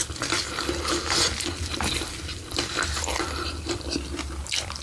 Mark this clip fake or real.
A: real